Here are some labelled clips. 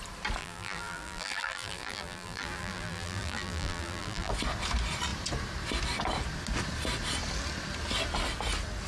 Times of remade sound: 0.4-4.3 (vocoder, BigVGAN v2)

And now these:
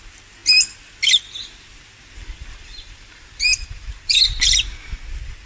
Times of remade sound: 2.2-4.2 (vocoder, BigVGAN v2)

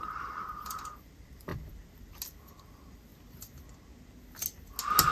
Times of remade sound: 0.0-1.5 (vocoder, BigVGAN v2); 2.6-3.1